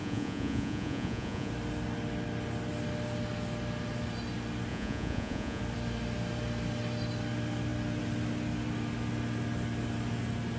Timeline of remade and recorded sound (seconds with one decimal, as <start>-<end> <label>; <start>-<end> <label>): 0.0-1.5 remade; 1.5-4.7 recorded; 4.7-5.6 remade; 5.6-10.6 recorded